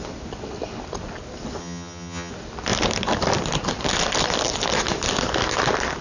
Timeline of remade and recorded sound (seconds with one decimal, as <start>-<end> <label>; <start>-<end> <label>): 0.0-1.6 recorded; 1.6-2.3 remade; 2.3-6.0 recorded